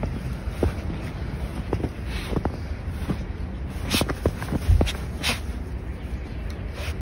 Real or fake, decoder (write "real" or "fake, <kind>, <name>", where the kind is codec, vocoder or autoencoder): real